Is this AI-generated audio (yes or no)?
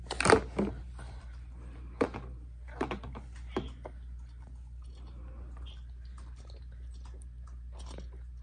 no